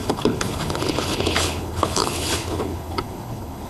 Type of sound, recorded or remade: remade